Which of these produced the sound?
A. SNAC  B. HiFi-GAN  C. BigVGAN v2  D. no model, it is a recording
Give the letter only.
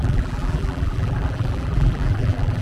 C